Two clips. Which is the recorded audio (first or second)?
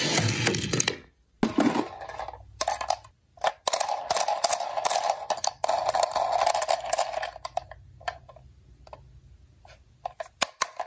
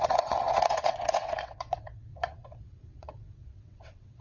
first